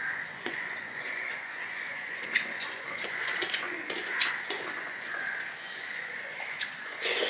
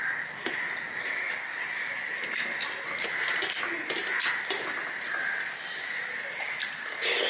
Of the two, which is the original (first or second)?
second